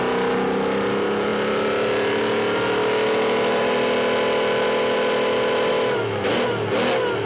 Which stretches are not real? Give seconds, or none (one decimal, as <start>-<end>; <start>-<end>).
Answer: 5.7-6.3